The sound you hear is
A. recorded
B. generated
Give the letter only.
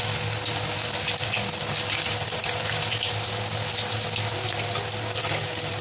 A